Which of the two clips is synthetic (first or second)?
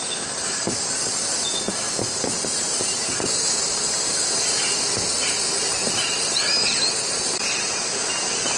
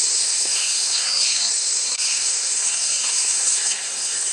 second